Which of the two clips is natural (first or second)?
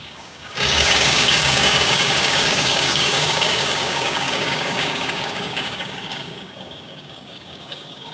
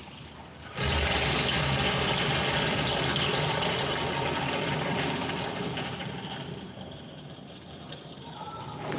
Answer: second